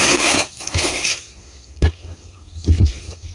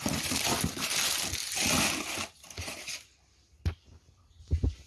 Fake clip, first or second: first